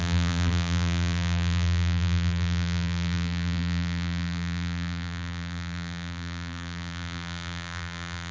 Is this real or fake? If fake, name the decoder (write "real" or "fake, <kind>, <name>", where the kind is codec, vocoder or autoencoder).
fake, vocoder, BigVGAN v2